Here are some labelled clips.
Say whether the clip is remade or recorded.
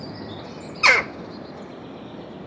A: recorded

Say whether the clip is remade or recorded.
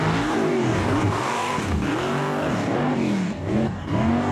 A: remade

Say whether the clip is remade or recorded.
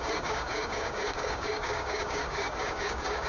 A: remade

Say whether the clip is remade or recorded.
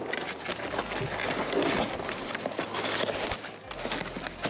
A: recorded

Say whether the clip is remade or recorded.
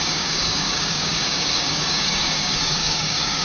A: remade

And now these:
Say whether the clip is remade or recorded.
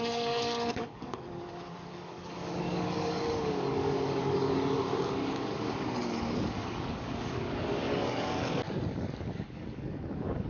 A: remade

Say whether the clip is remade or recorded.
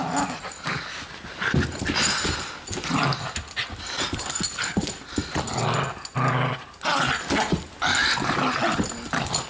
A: recorded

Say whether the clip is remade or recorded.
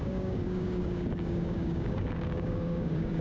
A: remade